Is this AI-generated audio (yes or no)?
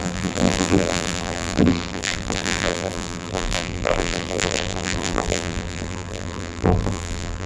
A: yes